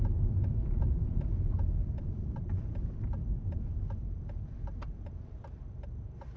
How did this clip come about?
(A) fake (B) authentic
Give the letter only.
A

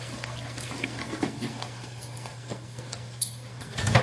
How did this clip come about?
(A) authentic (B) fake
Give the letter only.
B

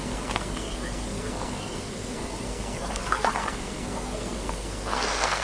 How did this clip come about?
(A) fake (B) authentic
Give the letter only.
A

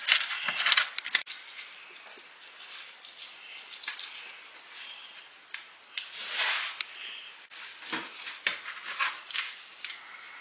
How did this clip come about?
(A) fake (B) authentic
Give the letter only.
B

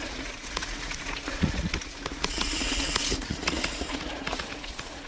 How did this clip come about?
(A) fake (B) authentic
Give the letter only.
A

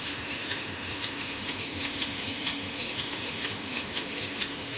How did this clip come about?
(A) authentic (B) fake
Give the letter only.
B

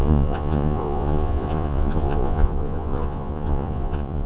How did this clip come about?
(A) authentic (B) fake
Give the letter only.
B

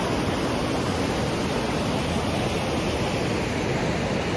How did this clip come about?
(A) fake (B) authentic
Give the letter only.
B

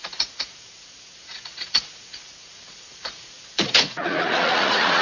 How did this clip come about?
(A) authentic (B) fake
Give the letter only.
B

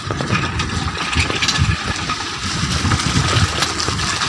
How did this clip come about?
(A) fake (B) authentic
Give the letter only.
B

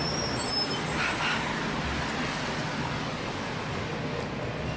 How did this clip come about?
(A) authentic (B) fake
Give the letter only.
A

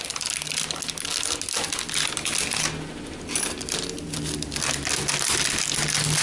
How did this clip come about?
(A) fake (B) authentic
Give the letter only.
B